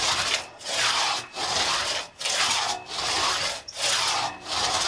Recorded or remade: recorded